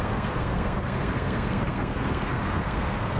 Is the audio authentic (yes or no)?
no